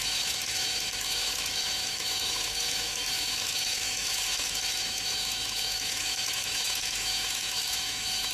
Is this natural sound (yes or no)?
no